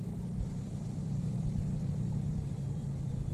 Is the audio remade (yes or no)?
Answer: yes